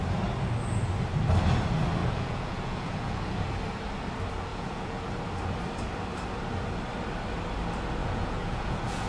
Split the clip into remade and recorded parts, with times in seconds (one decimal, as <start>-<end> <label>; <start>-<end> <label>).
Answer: 0.0-2.0 recorded; 2.0-3.4 remade; 3.4-4.5 recorded; 4.5-5.1 remade; 5.1-8.0 recorded; 8.0-9.1 remade